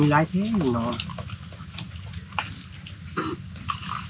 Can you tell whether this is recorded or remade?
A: recorded